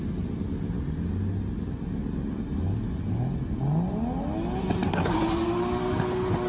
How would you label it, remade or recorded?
recorded